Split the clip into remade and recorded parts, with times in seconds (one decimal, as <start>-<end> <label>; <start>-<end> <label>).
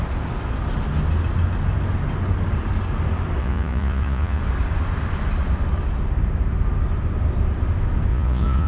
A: 0.0-3.4 recorded; 3.4-4.4 remade; 4.4-8.1 recorded; 8.1-8.7 remade